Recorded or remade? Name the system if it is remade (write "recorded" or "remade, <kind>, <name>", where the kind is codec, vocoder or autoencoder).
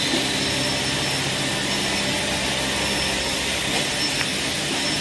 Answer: recorded